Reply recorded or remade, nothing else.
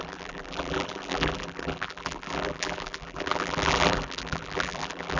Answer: remade